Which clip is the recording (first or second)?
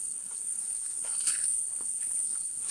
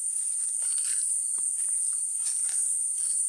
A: second